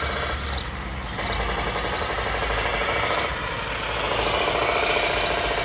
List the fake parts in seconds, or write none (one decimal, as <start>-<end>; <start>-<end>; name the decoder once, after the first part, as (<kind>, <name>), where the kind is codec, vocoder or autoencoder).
none